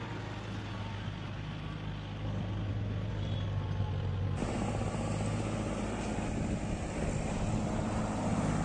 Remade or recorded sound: recorded